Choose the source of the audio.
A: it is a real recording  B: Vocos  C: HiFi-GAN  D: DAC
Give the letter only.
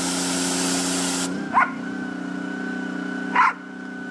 A